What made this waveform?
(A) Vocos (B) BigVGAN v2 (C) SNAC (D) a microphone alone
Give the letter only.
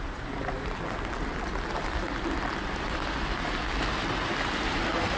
D